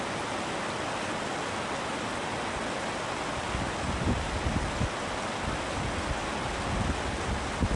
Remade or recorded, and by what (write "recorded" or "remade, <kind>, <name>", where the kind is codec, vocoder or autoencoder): recorded